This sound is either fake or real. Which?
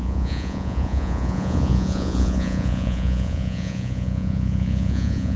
fake